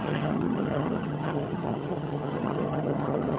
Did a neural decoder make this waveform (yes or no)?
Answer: yes